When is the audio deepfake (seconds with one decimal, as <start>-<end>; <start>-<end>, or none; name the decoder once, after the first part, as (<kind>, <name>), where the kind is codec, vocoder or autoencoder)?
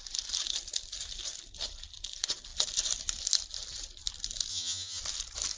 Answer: 4.5-5.0 (vocoder, HiFi-GAN)